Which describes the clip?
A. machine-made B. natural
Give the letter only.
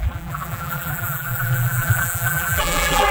A